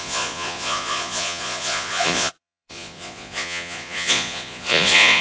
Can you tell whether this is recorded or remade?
remade